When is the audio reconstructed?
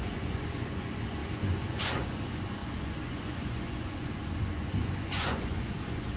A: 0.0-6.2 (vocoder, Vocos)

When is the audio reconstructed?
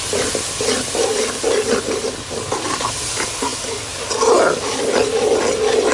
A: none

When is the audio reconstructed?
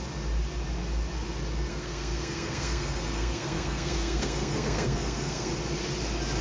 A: 1.7-5.5 (codec, SNAC)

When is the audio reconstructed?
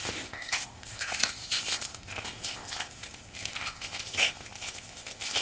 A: 0.0-5.4 (codec, ZipCodec)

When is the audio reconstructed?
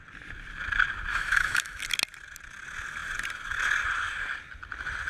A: 1.1-1.8 (autoencoder, DAC-VAE)